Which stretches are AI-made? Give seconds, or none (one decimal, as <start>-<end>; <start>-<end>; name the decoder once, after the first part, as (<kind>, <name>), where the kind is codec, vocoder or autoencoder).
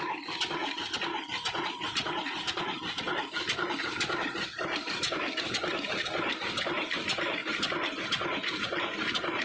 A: 0.0-7.4 (vocoder, BigVGAN v2); 8.0-9.4